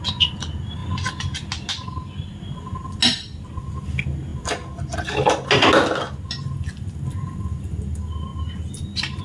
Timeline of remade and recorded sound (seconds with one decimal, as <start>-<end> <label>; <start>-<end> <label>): 0.0-9.2 recorded